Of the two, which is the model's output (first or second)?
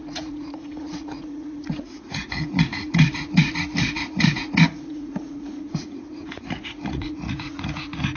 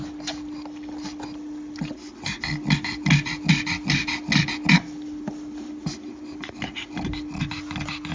first